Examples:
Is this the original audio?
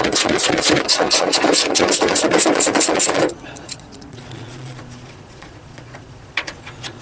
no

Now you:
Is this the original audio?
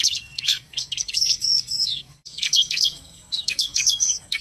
no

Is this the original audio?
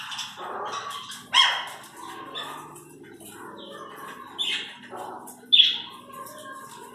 yes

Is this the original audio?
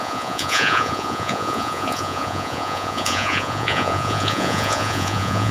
no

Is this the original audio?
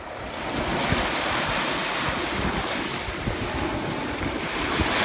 yes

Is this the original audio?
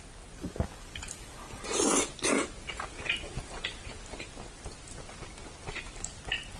yes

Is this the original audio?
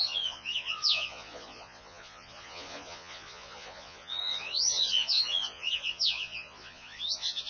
no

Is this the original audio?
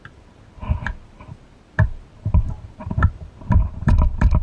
no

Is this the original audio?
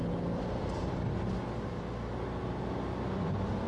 yes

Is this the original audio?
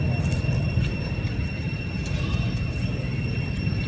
yes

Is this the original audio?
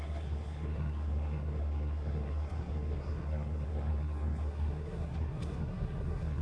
no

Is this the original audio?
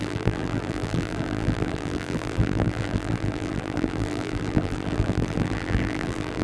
no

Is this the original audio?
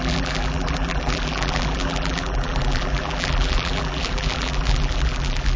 no